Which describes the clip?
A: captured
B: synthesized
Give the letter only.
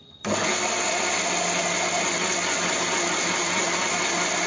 A